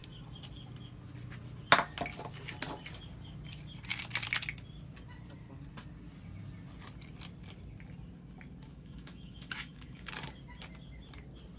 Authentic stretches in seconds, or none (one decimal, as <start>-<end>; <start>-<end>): 0.0-8.7; 10.1-11.6